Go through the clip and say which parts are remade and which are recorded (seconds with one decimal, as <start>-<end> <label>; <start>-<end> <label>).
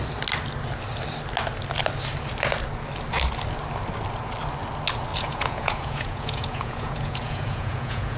0.0-5.1 recorded; 5.1-8.2 remade